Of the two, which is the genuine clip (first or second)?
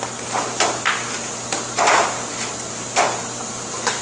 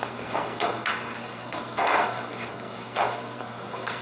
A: first